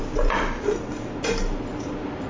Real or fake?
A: real